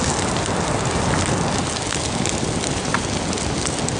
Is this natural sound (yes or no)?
yes